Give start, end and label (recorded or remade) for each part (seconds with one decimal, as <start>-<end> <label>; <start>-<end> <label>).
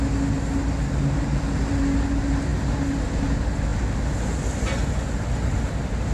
0.0-6.1 recorded